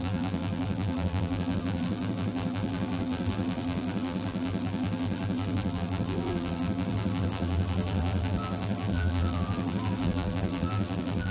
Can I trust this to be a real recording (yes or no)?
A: no